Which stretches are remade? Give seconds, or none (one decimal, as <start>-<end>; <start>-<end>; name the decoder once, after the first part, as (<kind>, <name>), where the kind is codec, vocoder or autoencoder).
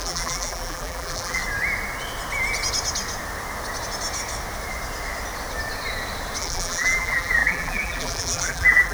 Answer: 0.0-1.4 (vocoder, BigVGAN v2); 6.4-8.9